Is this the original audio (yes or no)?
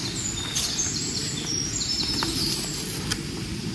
yes